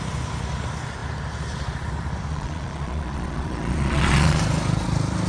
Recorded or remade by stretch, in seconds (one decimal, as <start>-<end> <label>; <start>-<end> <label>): 0.0-2.3 recorded; 2.3-4.4 remade; 4.4-5.3 recorded